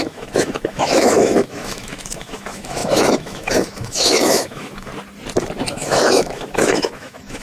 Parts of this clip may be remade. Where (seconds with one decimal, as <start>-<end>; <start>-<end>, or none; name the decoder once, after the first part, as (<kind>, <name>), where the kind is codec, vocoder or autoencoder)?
0.0-4.9 (autoencoder, DAC-VAE); 5.7-7.4